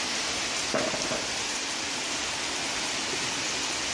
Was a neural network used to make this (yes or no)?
no